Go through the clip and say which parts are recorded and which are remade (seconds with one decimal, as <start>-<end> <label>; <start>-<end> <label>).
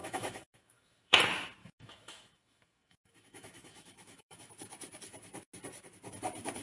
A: 0.0-1.2 remade; 1.2-1.6 recorded; 1.6-4.5 remade; 4.5-6.6 recorded